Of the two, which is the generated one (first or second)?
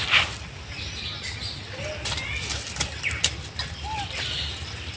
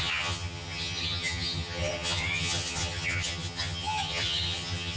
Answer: second